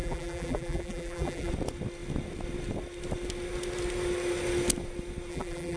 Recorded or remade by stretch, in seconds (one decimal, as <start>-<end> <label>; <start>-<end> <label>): 0.0-1.5 remade; 1.5-5.3 recorded; 5.3-5.8 remade